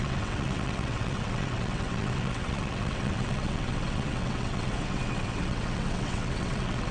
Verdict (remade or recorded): remade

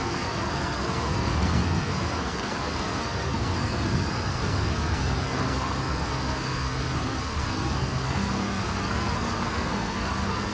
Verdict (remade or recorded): remade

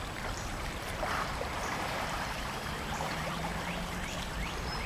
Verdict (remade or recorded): remade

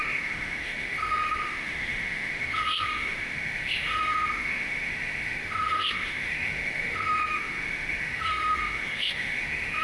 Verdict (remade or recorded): remade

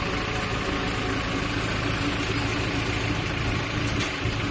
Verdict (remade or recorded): recorded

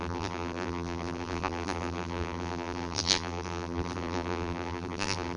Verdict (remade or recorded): remade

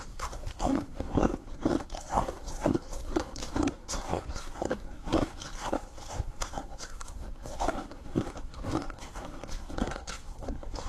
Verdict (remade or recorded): remade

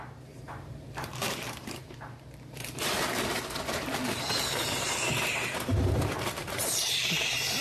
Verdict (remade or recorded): remade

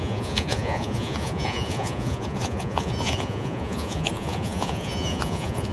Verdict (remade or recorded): remade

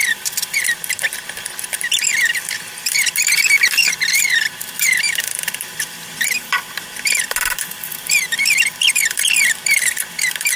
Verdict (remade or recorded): remade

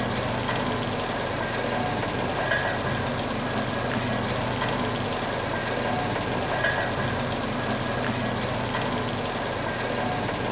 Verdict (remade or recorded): recorded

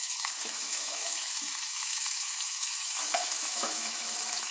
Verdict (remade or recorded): remade